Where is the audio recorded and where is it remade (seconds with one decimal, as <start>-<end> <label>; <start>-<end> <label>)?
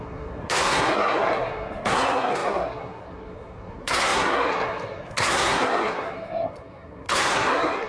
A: 0.0-7.9 remade